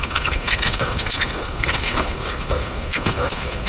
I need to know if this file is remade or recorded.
remade